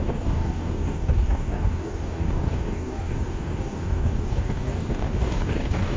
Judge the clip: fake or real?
fake